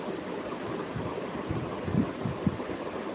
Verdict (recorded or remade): recorded